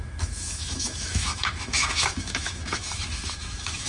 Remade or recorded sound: remade